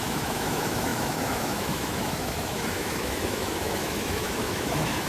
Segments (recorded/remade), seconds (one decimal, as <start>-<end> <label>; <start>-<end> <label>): 0.0-5.1 remade